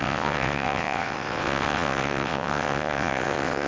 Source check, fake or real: fake